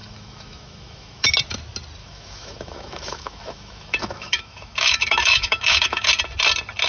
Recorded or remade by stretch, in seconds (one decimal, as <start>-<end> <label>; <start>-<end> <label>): 0.0-1.3 remade; 1.3-2.0 recorded; 2.0-6.1 remade; 6.1-6.9 recorded